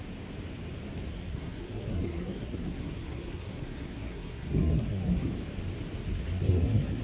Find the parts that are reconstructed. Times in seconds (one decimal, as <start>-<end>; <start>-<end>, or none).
1.1-5.3; 6.1-7.0

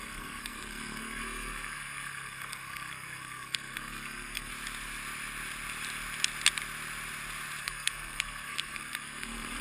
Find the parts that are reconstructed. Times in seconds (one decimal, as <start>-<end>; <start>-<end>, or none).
0.0-4.5; 7.6-9.6

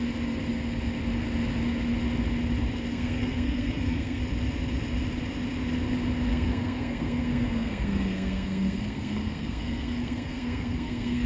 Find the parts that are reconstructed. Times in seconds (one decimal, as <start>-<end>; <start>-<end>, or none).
2.9-4.2; 6.3-11.3

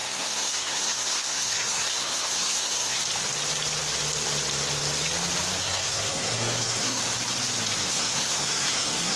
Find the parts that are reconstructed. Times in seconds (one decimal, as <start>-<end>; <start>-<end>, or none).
0.0-3.0; 5.6-7.0; 7.9-9.2

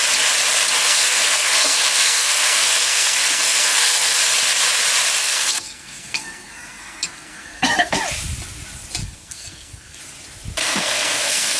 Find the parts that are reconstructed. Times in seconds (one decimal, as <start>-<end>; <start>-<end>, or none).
0.8-4.2; 5.2-8.0; 9.0-10.0; 10.6-11.6

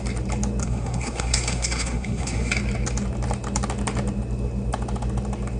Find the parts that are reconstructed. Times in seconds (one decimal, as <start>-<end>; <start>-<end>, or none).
0.6-2.5